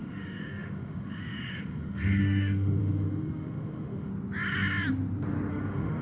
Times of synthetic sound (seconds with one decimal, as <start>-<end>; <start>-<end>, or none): 0.0-4.1; 5.5-6.0